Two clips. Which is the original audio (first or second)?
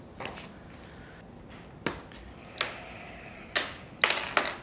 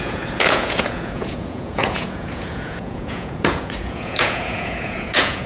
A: first